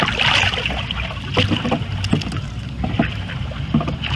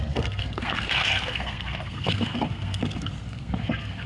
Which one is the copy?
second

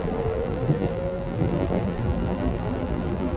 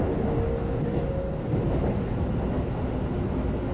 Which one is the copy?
first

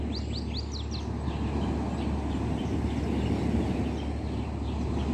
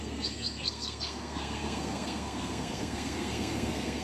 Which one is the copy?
second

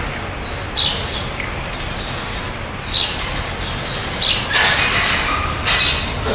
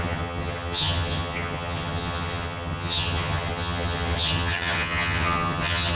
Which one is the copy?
second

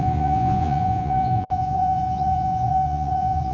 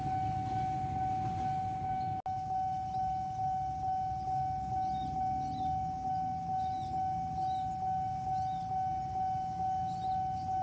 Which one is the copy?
first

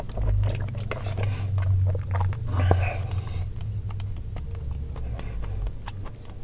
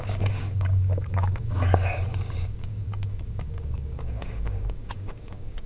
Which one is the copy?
second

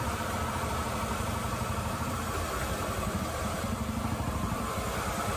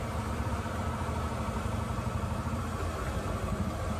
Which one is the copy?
first